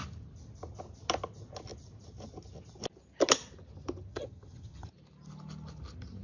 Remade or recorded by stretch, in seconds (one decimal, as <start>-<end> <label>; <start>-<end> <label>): 0.0-4.1 recorded; 4.1-4.9 remade; 4.9-6.2 recorded